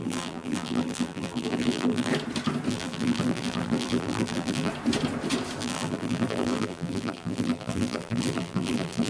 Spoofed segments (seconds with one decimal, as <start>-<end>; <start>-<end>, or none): 0.0-2.1; 2.7-4.7; 5.6-9.1